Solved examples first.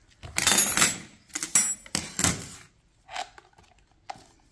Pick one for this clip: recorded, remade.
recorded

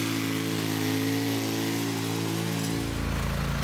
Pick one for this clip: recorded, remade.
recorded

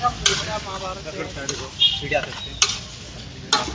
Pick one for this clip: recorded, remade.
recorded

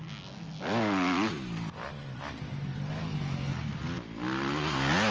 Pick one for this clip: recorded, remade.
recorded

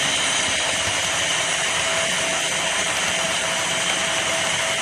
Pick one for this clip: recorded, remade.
recorded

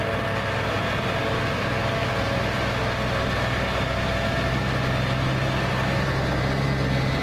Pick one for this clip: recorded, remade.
recorded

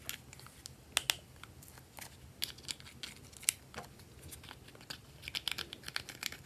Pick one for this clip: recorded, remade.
recorded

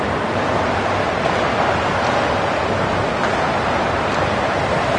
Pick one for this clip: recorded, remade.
recorded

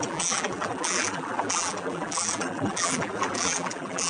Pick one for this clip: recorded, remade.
remade